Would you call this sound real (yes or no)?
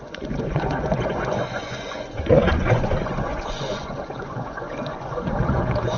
no